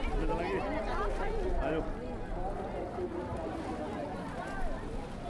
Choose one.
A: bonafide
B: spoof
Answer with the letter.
A